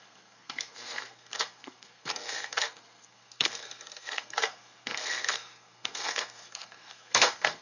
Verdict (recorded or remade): remade